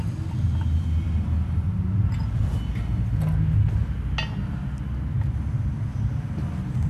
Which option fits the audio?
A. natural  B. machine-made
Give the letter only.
A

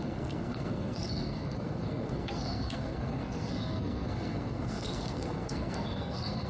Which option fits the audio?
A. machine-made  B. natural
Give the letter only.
A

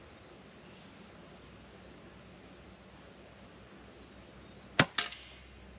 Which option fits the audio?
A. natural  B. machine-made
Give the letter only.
A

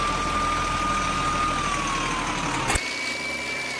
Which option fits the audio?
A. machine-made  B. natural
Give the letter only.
B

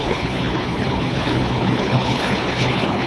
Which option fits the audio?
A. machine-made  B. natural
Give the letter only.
A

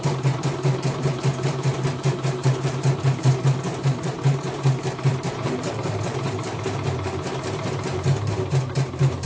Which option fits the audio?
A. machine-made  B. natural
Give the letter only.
A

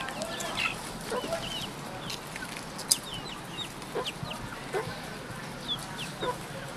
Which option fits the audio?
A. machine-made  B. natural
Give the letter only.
B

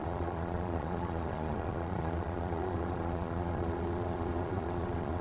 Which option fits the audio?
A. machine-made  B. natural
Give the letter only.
A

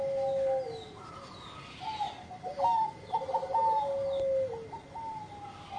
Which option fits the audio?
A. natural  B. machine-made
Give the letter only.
A